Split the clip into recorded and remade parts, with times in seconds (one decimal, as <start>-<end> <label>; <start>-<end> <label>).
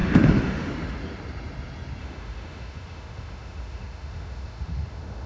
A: 0.0-0.7 remade; 0.7-2.0 recorded; 2.0-5.3 remade